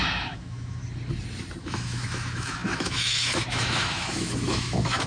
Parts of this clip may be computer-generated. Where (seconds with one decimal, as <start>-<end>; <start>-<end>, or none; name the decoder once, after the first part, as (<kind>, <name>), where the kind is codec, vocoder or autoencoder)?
0.0-0.8 (autoencoder, DAC-VAE); 1.6-5.1